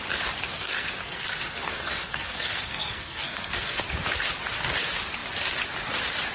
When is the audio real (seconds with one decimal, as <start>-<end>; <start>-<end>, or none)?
0.0-0.5; 3.8-6.3